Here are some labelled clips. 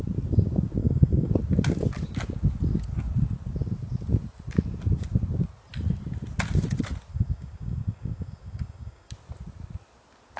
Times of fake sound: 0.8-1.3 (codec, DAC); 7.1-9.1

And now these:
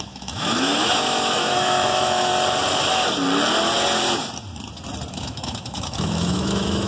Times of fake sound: 0.0-2.3 (autoencoder, DAC-VAE); 5.1-6.9

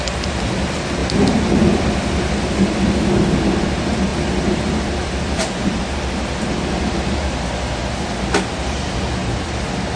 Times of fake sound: 1.0-2.6 (vocoder, BigVGAN v2); 4.1-5.4; 9.2-10.0

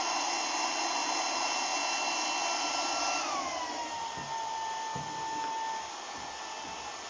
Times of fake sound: none

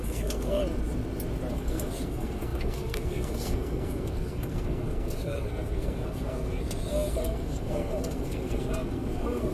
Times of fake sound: 0.0-0.6 (codec, SNAC); 1.5-9.5

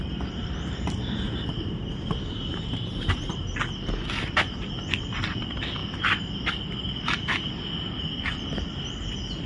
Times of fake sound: 0.4-3.3 (vocoder, BigVGAN v2)

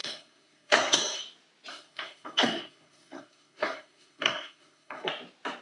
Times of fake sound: 0.0-1.2 (codec, SNAC); 1.7-5.1